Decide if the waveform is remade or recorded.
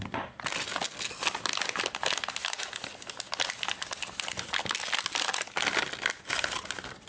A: recorded